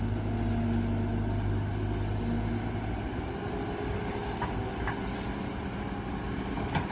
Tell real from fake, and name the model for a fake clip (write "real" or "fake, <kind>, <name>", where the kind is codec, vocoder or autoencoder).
real